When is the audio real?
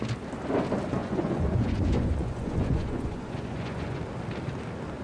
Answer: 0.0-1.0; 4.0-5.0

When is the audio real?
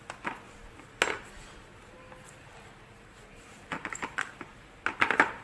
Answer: 0.0-5.4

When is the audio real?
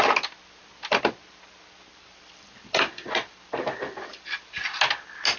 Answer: 0.0-1.9; 4.5-5.4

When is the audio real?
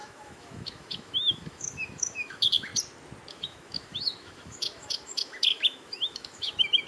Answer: 2.7-3.3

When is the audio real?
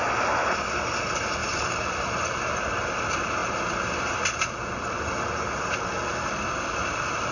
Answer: 3.4-5.4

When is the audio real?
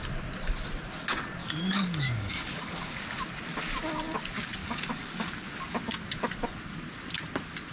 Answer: 0.0-1.4; 3.0-4.6; 5.3-7.7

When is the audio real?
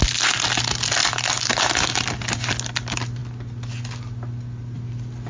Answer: 0.0-5.3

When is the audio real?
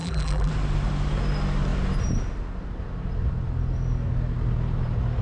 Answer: 0.5-5.2